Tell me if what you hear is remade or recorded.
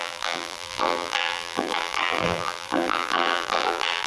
remade